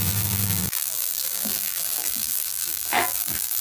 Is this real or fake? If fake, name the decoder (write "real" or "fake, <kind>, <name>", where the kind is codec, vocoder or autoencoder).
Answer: fake, vocoder, BigVGAN v2